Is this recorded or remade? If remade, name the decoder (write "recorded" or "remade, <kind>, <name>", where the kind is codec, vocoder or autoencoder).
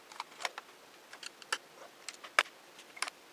recorded